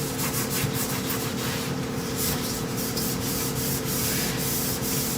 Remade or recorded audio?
remade